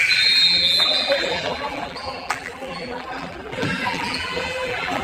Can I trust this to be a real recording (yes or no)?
no